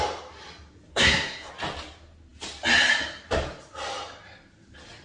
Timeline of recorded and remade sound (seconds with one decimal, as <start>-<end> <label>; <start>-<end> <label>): 0.0-0.9 recorded; 0.9-1.5 remade; 1.5-5.0 recorded